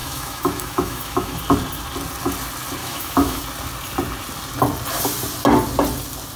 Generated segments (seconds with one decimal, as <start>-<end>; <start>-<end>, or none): 0.0-1.4; 2.8-3.4